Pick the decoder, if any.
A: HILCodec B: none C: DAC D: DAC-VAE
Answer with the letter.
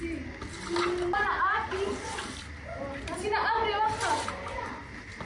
B